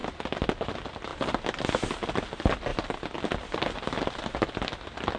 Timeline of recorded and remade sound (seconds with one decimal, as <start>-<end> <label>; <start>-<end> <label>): 0.0-5.2 recorded